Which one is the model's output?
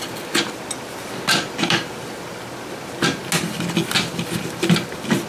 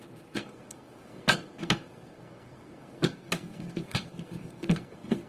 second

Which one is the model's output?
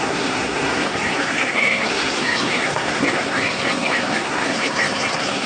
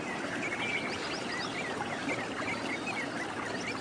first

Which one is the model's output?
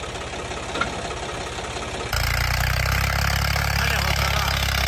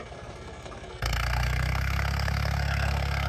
second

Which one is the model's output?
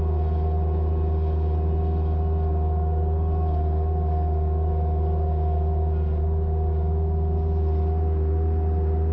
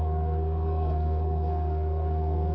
second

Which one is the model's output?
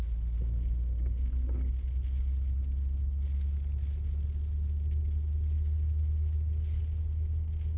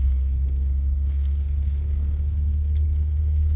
second